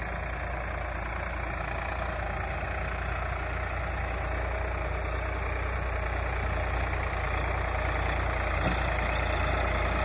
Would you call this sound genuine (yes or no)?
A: yes